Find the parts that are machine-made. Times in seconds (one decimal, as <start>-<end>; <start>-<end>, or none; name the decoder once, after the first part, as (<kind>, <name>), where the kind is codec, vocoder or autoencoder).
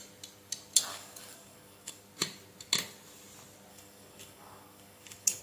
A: 0.9-2.0 (codec, DAC); 3.7-5.4